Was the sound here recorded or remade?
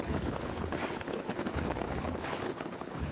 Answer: remade